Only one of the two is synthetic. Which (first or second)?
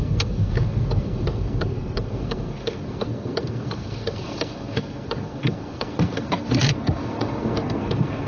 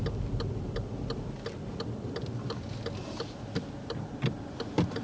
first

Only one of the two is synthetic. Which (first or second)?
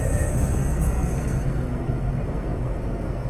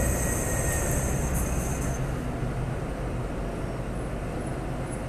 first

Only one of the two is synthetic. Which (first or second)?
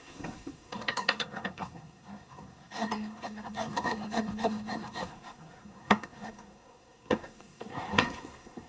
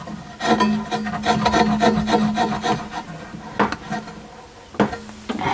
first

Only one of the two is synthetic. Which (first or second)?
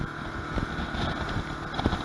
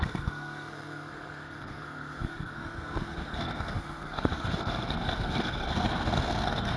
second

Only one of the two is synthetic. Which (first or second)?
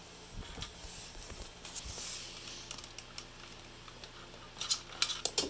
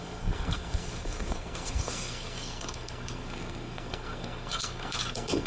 second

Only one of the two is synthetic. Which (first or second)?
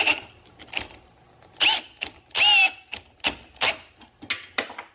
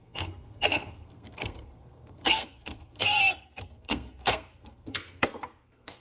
second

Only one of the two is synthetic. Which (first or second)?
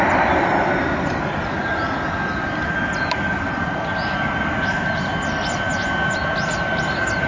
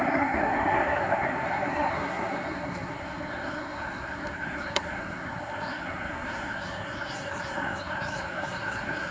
second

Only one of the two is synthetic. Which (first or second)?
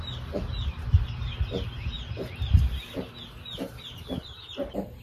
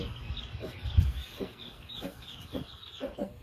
second